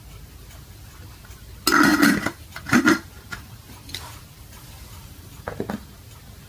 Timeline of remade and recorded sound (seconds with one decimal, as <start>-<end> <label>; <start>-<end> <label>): 0.0-1.9 recorded; 1.9-5.5 remade; 5.5-6.5 recorded